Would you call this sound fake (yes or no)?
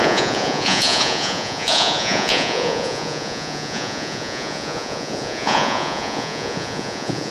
yes